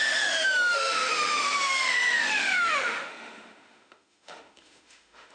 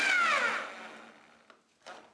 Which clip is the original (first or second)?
second